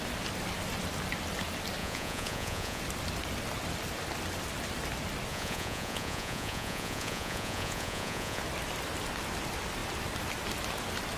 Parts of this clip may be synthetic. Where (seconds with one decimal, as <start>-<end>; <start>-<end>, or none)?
1.8-2.8; 5.3-8.4